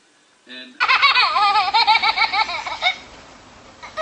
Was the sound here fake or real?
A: real